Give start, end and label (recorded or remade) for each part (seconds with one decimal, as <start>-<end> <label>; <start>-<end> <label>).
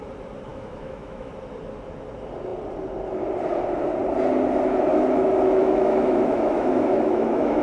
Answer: 0.0-0.5 recorded; 0.5-1.3 remade; 1.3-4.9 recorded; 4.9-7.6 remade